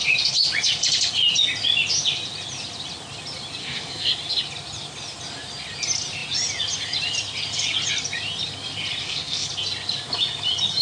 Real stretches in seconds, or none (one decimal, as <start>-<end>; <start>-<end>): 0.0-3.6; 4.1-9.0; 9.5-10.8